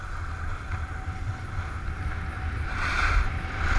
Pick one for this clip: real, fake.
real